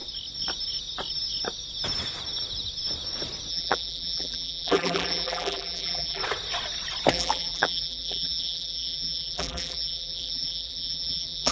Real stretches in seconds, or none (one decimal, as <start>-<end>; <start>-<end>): 0.0-3.5; 6.2-7.1